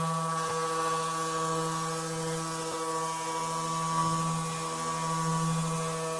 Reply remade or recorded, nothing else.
recorded